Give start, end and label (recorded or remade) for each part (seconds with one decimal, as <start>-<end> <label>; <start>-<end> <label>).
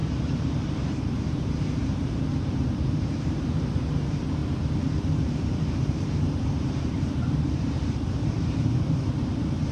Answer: 0.0-4.4 remade; 4.4-5.2 recorded; 5.2-9.7 remade